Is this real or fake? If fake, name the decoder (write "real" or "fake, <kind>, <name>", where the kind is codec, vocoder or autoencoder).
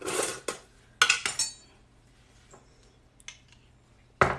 real